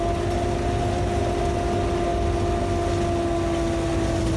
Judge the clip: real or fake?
real